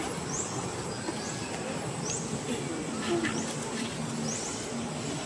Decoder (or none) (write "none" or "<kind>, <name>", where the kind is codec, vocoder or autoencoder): none